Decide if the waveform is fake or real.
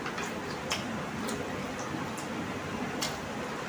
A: real